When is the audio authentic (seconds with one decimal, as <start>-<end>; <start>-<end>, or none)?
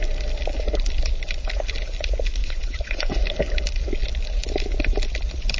0.0-2.4; 3.2-5.6